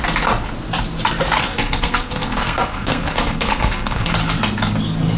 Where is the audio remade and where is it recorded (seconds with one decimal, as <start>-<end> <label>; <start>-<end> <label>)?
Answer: 0.0-1.4 recorded; 1.4-4.1 remade; 4.1-5.2 recorded